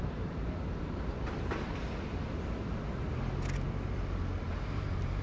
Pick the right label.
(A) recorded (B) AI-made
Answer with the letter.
A